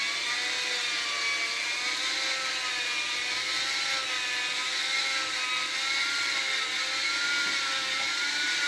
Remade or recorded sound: recorded